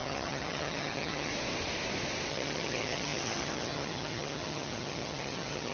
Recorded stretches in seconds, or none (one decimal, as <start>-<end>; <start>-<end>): 1.3-2.3